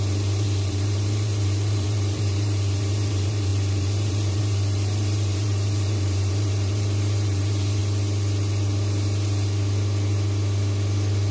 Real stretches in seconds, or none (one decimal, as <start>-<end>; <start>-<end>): 7.8-11.3

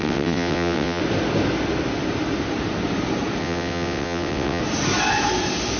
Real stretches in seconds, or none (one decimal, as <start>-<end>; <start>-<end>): 1.0-3.4; 4.6-5.8

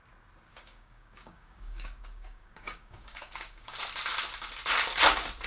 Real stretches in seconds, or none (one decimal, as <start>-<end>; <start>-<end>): 0.0-0.5; 3.8-5.5

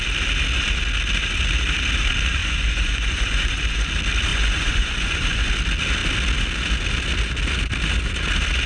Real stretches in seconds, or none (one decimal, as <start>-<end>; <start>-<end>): 0.0-2.4; 3.9-4.3; 5.5-8.7

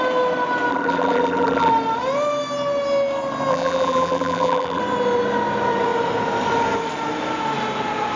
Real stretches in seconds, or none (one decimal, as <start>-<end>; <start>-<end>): 0.0-0.7; 1.7-3.5; 4.8-8.2

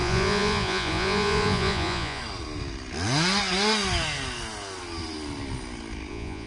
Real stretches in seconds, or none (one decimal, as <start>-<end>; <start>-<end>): 2.2-6.1